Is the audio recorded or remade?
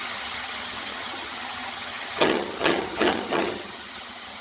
remade